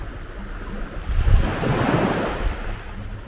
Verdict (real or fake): real